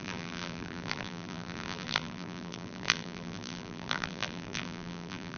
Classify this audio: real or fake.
fake